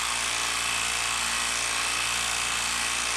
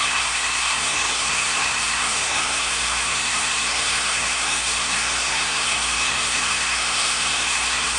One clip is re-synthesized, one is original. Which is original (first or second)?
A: first